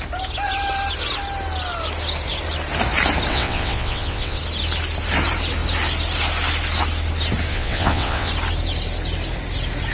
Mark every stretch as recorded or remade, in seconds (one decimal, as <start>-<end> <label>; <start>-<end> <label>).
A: 0.0-3.3 recorded; 3.3-4.4 remade; 4.4-7.5 recorded; 7.5-8.3 remade; 8.3-9.9 recorded